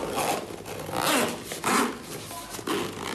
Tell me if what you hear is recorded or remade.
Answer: recorded